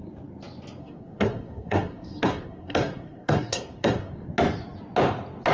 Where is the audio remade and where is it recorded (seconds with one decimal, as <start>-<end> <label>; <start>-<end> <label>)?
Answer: 0.0-0.8 recorded; 0.8-4.1 remade; 4.1-5.5 recorded